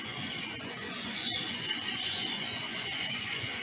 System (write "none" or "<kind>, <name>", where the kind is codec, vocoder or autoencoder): vocoder, Vocos